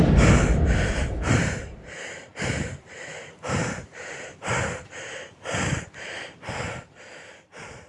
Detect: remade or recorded remade